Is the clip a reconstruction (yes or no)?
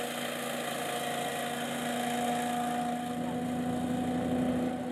no